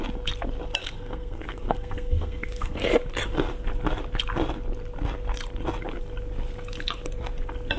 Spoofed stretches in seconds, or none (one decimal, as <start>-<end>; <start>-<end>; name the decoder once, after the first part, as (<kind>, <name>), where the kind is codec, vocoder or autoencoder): 0.8-2.8 (codec, SNAC)